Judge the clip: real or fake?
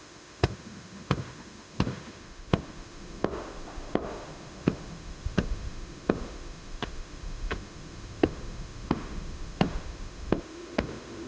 fake